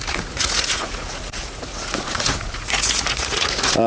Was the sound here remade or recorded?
remade